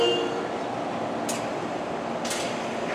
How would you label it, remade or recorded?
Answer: recorded